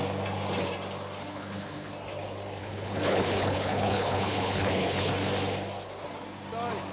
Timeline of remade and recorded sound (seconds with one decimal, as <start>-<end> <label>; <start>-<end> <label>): 0.0-1.3 recorded; 1.3-1.9 remade; 1.9-2.6 recorded; 2.6-5.1 remade; 5.1-6.9 recorded